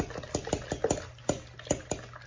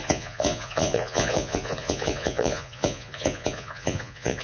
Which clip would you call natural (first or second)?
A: first